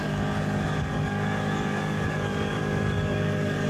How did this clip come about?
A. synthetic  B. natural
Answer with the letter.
A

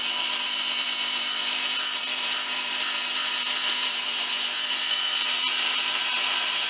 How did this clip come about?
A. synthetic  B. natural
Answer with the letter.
A